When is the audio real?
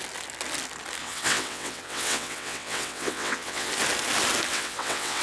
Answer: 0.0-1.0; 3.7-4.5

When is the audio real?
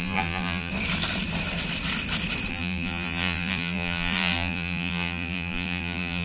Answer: 0.7-2.5